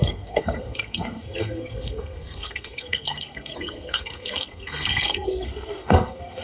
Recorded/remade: remade